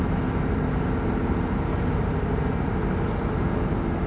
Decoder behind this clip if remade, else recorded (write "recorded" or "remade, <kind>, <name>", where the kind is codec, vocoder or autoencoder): recorded